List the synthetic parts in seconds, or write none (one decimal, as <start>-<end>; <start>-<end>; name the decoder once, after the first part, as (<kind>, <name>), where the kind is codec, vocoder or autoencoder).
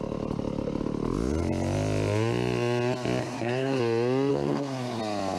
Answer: 3.2-3.8 (codec, SNAC); 4.3-5.0